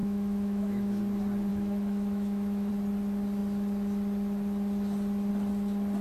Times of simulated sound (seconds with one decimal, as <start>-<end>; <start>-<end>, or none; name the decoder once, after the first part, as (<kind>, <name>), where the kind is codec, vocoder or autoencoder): 0.0-1.0 (autoencoder, DAC-VAE); 1.5-2.7